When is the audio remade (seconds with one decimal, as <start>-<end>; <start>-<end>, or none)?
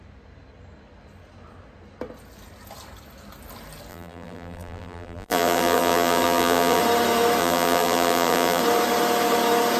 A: 3.9-6.8; 7.4-8.6